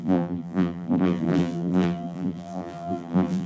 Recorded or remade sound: remade